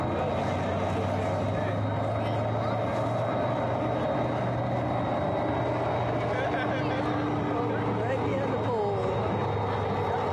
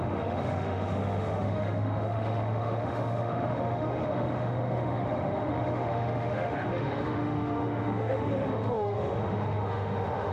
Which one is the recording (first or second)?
first